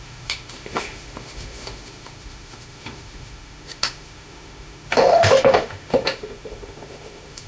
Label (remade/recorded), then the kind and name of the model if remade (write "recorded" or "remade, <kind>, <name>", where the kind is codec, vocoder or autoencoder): remade, autoencoder, DAC-VAE